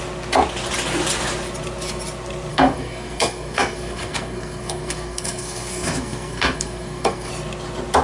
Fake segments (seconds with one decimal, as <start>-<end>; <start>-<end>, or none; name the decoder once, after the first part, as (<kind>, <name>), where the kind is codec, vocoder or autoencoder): 2.5-7.3 (codec, SNAC)